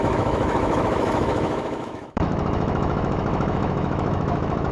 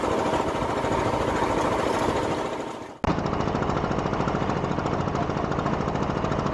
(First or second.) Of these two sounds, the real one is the second